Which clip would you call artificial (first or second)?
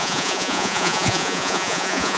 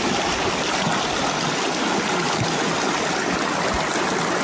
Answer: first